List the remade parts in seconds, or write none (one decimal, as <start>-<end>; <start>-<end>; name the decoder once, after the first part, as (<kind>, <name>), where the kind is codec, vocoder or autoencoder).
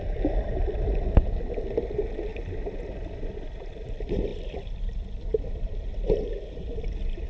none